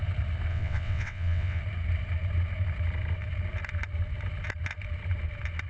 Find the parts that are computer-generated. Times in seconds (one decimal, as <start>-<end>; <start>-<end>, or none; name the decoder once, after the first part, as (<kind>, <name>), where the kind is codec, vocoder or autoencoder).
0.5-1.6 (vocoder, WaveNeXt)